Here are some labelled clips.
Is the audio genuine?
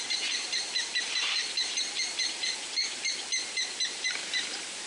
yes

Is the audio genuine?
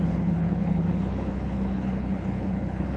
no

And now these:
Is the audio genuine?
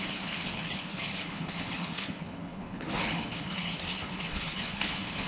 no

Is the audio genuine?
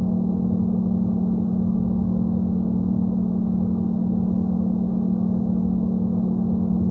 yes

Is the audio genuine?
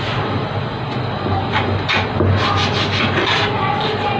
yes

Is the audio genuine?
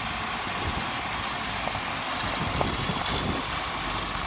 yes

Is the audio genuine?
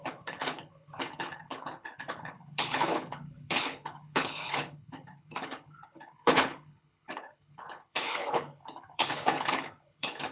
no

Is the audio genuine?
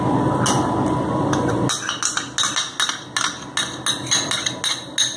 yes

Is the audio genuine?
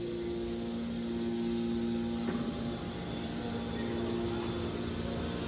yes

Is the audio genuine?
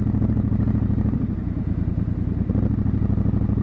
yes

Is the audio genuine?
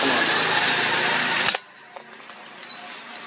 yes